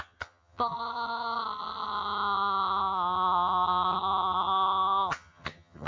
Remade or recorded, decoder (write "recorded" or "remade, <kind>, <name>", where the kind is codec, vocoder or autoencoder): remade, vocoder, HiFi-GAN